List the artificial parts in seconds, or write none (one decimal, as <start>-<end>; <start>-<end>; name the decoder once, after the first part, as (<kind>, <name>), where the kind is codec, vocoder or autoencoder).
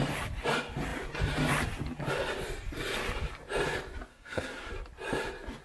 4.1-4.7 (codec, SNAC)